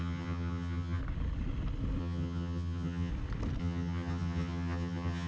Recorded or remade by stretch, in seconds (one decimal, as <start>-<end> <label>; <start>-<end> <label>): 0.0-1.0 remade; 1.0-2.0 recorded; 2.0-3.1 remade; 3.1-3.6 recorded; 3.6-5.3 remade